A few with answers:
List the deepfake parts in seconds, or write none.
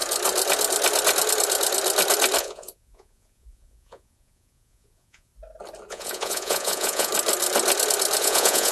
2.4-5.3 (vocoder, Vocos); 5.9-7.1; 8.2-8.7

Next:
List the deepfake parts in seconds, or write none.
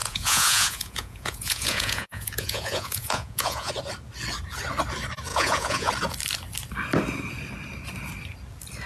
0.0-3.7 (vocoder, Vocos); 5.3-5.9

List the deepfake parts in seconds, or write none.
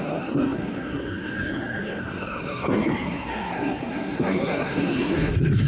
0.0-5.7 (codec, SNAC)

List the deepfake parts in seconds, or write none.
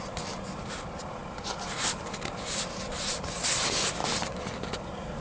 none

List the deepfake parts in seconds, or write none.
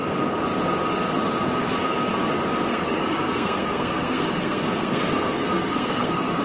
2.7-6.4 (codec, SNAC)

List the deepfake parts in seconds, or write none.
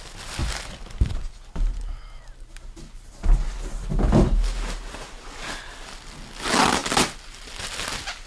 none